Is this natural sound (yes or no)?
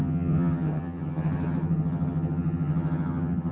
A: no